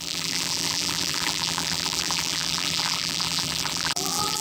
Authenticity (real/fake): fake